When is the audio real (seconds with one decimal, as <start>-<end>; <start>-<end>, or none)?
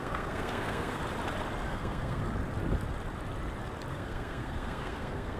1.0-1.7; 2.2-3.9